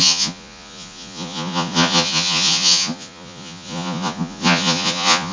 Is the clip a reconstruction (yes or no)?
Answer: yes